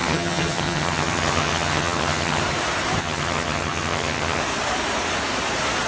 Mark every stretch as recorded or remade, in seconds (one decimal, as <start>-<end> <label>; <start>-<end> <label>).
0.0-2.4 remade; 2.4-3.0 recorded; 3.0-4.4 remade; 4.4-5.9 recorded